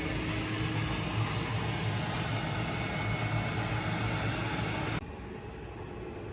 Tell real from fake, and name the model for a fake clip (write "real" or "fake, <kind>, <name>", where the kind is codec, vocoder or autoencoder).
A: real